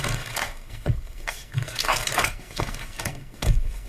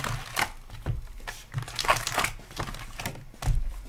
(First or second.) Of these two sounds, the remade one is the first